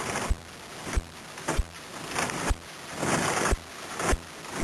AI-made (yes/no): no